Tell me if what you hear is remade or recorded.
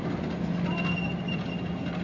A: recorded